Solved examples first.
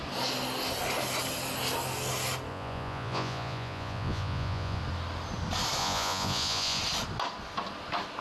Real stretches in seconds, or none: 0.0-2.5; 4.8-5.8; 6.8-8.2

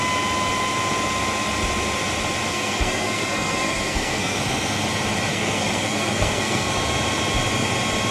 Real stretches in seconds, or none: 0.0-2.5; 4.4-5.3; 6.7-8.1

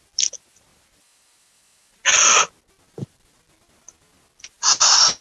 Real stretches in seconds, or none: 0.0-5.2